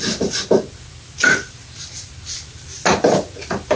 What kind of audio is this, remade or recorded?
recorded